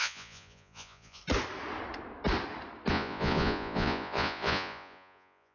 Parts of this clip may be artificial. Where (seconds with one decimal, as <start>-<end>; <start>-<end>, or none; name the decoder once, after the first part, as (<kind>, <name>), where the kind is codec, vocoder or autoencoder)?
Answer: 0.0-1.2 (vocoder, Vocos); 2.9-5.5